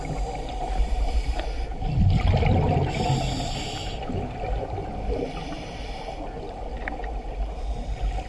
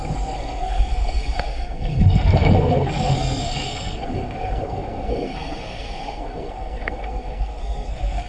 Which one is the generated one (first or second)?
second